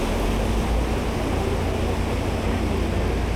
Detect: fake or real real